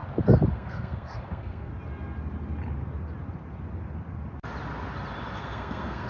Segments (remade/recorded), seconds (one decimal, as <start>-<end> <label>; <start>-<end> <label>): 0.0-0.5 recorded; 0.5-1.7 remade; 1.7-5.4 recorded; 5.4-6.1 remade